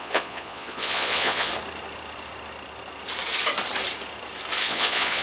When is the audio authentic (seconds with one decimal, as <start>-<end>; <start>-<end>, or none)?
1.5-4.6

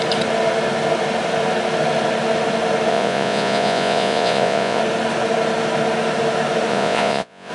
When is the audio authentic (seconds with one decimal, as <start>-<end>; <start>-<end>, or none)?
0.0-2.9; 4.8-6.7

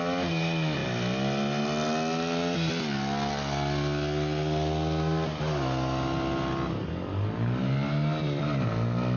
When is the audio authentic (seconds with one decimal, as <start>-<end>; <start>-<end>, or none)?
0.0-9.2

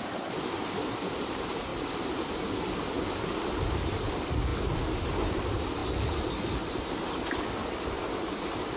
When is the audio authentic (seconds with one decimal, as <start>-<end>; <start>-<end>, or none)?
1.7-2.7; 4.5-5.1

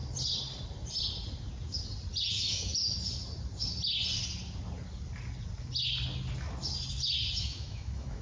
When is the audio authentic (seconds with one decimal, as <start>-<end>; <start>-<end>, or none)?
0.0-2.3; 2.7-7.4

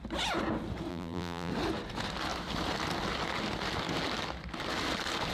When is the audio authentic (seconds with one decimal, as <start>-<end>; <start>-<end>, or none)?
0.0-0.9; 1.5-5.3